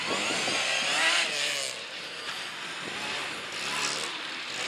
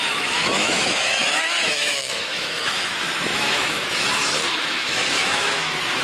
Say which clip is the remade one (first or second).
second